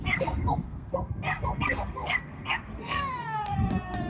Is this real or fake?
fake